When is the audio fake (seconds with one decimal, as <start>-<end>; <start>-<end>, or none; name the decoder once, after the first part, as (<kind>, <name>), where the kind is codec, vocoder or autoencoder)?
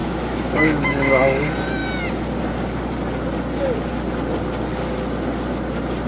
0.0-1.4 (autoencoder, DAC-VAE)